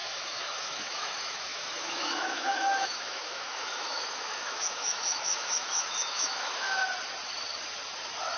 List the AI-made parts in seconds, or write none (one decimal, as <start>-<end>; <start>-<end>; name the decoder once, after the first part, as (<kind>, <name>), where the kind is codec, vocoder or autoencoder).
0.0-6.8 (autoencoder, DAC-VAE)